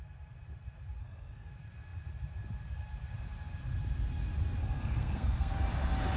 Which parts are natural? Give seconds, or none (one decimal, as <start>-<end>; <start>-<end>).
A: 0.0-1.0; 1.5-4.6; 5.6-6.2